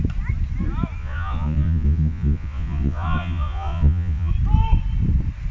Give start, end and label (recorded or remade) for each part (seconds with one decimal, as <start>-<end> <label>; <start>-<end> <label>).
0.0-1.0 recorded; 1.0-4.3 remade; 4.3-5.5 recorded